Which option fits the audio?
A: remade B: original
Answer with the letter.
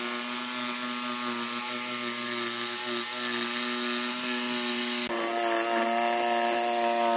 B